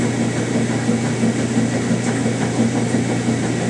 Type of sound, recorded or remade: recorded